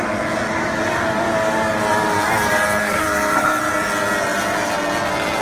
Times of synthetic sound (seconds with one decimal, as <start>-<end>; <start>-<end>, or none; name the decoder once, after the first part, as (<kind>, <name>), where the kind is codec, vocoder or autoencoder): 2.8-3.6 (codec, SNAC)